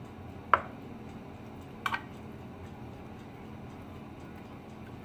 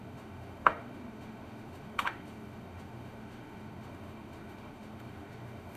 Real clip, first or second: first